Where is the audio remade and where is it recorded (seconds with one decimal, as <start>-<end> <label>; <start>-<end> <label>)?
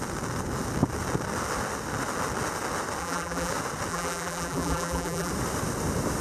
0.0-3.0 recorded; 3.0-3.5 remade; 3.5-3.9 recorded; 3.9-5.3 remade; 5.3-6.2 recorded